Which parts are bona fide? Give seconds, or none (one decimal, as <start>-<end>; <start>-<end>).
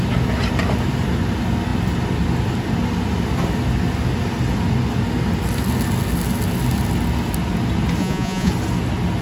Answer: 0.0-8.0; 8.5-9.2